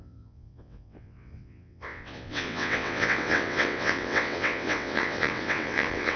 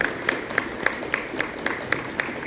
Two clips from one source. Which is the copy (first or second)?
first